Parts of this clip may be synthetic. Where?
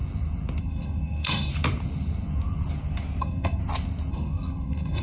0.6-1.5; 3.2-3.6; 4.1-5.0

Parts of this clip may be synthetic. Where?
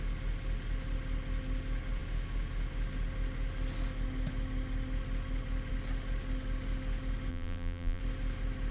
7.3-8.0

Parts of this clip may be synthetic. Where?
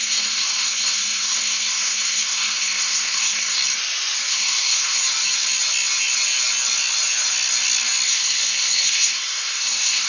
0.0-3.6; 4.3-5.0; 8.1-10.1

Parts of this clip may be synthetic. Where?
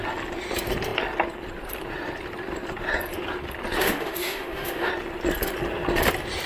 3.8-4.9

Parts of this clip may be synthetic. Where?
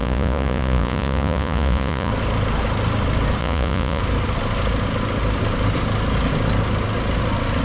0.0-2.1; 3.4-4.0